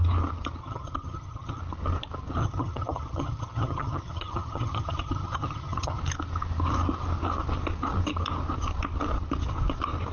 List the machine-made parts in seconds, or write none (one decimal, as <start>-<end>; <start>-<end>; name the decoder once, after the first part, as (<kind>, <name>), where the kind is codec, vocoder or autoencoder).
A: 0.6-1.6 (vocoder, HiFi-GAN); 2.4-6.0